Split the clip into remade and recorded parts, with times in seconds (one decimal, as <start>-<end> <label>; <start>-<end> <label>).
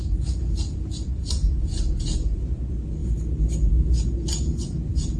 0.0-5.2 recorded